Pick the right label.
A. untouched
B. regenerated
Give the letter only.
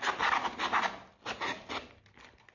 A